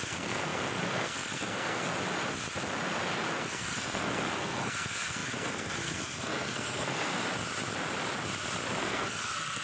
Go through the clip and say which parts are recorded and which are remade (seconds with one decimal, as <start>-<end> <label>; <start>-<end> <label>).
0.0-1.9 remade; 1.9-3.4 recorded; 3.4-7.2 remade; 7.2-8.8 recorded; 8.8-9.6 remade